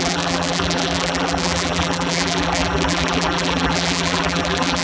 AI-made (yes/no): yes